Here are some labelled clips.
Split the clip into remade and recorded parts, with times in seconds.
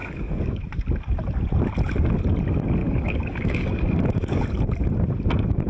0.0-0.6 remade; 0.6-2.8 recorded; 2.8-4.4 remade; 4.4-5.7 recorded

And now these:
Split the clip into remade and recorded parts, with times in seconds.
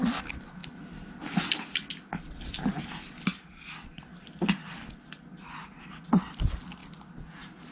0.0-7.7 recorded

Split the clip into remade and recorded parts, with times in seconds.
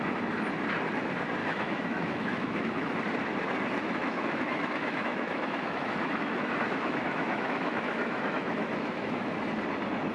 0.0-1.4 recorded; 1.4-3.0 remade; 3.0-4.0 recorded; 4.0-9.3 remade; 9.3-10.1 recorded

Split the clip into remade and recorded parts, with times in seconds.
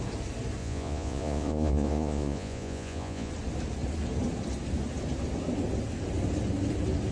0.0-0.6 recorded; 0.6-3.3 remade; 3.3-7.1 recorded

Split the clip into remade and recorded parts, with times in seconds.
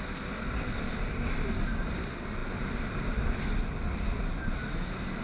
0.0-5.2 recorded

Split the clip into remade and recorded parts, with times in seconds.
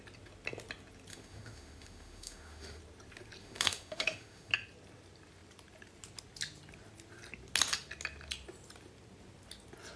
0.0-1.1 recorded; 1.1-2.8 remade; 2.8-3.4 recorded; 3.4-4.5 remade; 4.5-10.0 recorded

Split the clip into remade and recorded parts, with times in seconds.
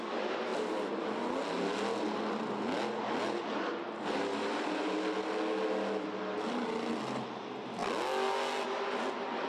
0.0-9.5 recorded